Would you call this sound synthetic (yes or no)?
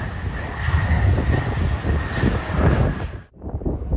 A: no